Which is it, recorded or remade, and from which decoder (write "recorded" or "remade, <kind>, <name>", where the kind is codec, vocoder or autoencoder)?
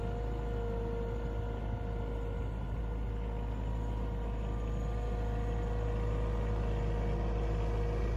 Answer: remade, vocoder, BigVGAN v2